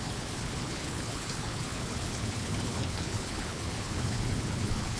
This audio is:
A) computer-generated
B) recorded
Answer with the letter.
A